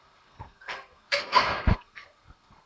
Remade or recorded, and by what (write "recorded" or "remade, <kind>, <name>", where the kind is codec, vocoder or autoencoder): remade, codec, SNAC